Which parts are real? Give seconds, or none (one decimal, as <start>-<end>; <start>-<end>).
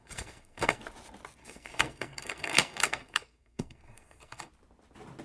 0.8-1.4; 4.5-5.2